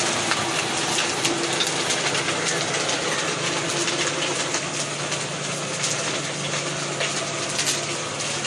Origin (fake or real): real